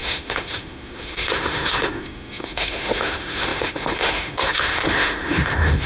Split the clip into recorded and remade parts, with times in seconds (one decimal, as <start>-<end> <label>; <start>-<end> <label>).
0.0-5.9 remade